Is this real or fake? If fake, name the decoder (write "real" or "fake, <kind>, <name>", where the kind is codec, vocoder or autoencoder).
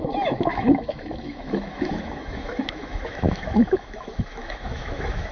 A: fake, autoencoder, DAC-VAE